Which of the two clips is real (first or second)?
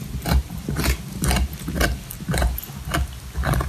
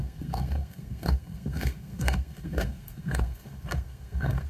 first